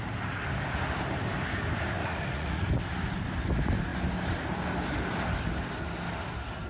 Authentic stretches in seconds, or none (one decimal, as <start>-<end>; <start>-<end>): 0.0-2.0; 2.7-6.7